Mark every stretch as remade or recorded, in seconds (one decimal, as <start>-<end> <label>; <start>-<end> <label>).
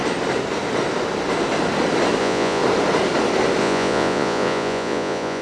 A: 0.0-2.2 recorded; 2.2-2.6 remade; 2.6-3.6 recorded; 3.6-5.4 remade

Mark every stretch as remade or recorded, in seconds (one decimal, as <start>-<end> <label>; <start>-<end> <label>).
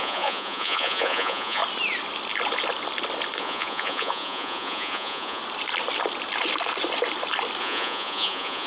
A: 0.0-1.6 remade; 1.6-3.4 recorded; 3.4-5.4 remade; 5.4-7.6 recorded; 7.6-8.7 remade